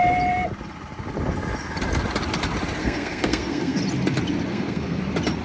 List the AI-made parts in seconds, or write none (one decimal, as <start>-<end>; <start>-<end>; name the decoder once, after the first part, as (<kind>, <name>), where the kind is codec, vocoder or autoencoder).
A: 2.8-3.8 (codec, SNAC); 4.5-5.0